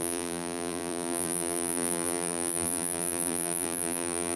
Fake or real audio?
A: fake